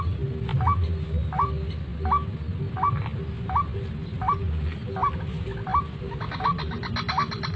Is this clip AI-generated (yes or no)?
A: no